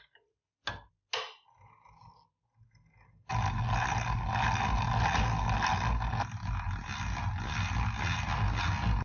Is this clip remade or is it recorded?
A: recorded